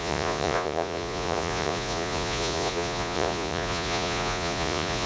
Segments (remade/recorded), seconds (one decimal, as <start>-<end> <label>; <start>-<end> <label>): 0.0-5.1 remade